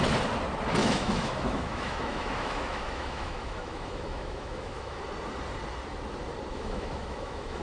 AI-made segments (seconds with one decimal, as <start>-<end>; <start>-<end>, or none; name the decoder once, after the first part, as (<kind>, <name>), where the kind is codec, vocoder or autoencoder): 0.8-5.0 (autoencoder, DAC-VAE); 6.5-7.6